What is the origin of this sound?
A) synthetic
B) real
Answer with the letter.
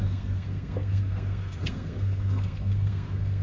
A